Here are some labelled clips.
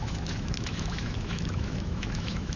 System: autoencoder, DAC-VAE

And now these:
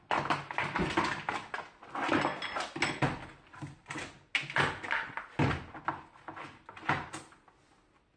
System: none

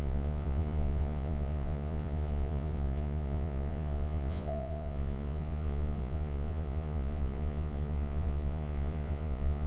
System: vocoder, Vocos